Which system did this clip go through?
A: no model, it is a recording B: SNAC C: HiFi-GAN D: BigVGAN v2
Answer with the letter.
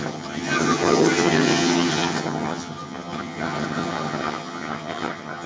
C